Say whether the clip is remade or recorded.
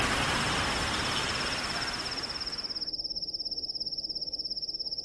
recorded